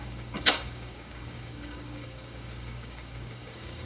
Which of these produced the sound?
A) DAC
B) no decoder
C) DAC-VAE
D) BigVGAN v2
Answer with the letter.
A